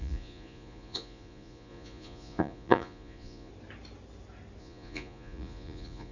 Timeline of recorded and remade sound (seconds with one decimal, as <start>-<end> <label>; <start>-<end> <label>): 0.0-3.5 remade; 3.5-4.6 recorded; 4.6-6.1 remade